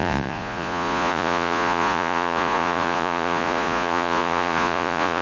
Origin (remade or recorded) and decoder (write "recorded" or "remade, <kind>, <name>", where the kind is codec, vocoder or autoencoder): remade, vocoder, Vocos